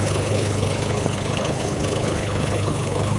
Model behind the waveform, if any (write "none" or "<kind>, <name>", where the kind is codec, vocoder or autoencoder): codec, HILCodec